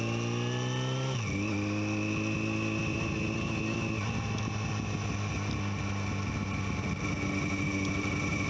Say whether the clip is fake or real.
real